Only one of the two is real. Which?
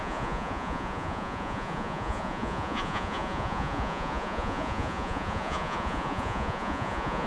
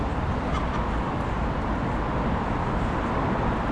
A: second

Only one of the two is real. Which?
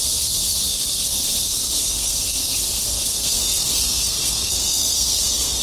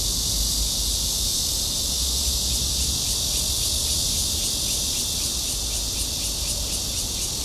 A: second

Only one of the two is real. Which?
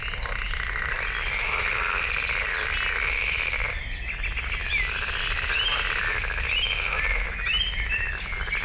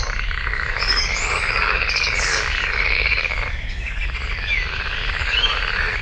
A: first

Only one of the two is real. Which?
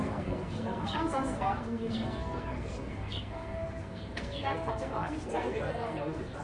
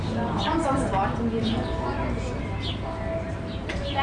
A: second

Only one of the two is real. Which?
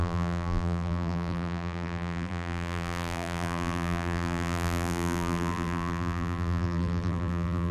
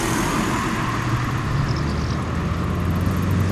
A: second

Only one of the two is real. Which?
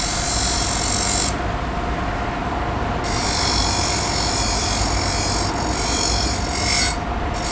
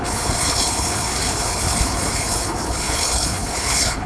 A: first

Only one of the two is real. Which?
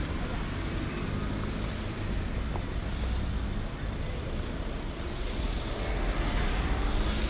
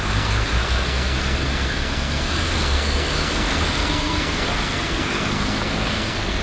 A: first